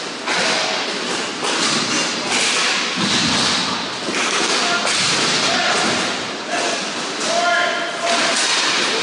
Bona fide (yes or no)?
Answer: yes